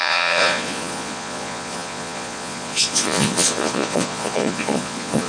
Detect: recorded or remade remade